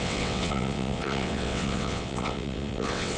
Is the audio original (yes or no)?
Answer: no